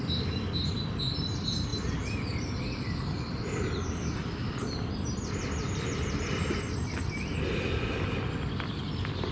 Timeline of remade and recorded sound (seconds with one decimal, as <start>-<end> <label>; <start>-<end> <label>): 0.0-9.3 recorded